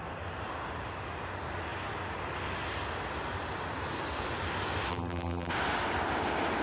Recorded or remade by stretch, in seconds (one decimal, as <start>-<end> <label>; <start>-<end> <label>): 0.0-4.9 recorded; 4.9-5.5 remade; 5.5-6.6 recorded